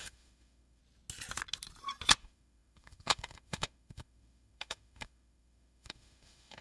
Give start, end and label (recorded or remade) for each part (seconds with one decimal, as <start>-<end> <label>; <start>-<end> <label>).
0.0-0.8 remade; 0.8-2.2 recorded; 2.2-6.6 remade